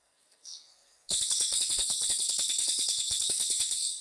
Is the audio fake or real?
fake